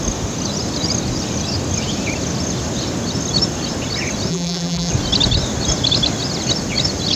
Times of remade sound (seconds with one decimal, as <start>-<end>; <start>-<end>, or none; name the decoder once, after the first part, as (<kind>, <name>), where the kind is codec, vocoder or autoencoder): 4.3-4.9 (vocoder, BigVGAN v2)